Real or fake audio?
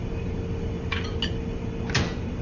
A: real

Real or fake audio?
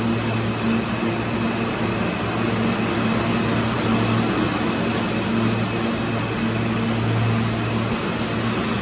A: real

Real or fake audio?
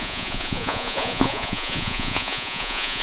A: fake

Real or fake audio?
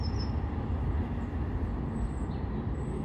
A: real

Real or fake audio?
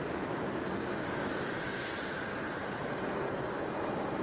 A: real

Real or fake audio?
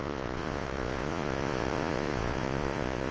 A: fake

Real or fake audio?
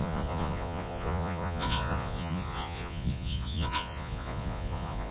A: fake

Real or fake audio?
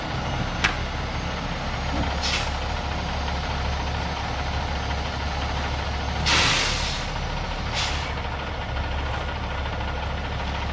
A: real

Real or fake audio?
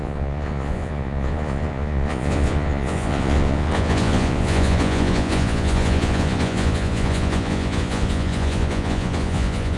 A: fake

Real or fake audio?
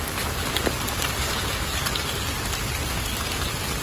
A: real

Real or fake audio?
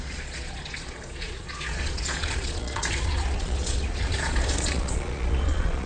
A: fake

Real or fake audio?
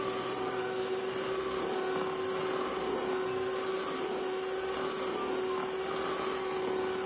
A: real